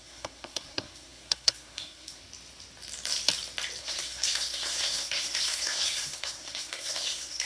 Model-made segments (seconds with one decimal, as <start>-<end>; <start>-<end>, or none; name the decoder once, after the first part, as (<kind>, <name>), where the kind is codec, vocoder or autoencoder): 0.0-2.2 (codec, SNAC); 3.8-7.5